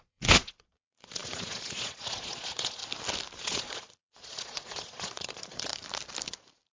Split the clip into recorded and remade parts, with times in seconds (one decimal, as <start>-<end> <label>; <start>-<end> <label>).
0.0-2.8 remade; 2.8-3.4 recorded; 3.4-5.7 remade; 5.7-6.8 recorded